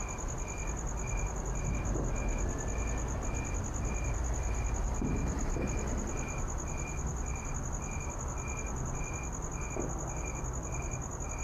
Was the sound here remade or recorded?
recorded